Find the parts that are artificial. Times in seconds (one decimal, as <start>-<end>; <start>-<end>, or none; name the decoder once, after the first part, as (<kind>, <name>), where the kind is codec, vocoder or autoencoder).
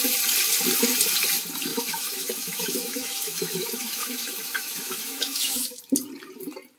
1.7-5.8 (autoencoder, DAC-VAE)